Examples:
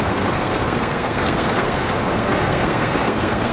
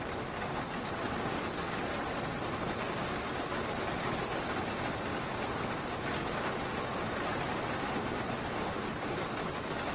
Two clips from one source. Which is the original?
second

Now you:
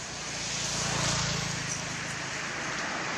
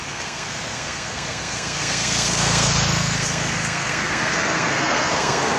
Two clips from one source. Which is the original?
first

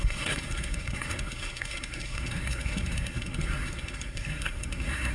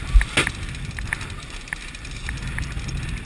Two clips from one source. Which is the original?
second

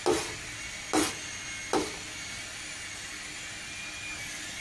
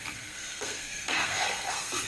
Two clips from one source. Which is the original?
first